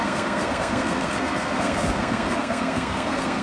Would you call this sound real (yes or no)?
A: no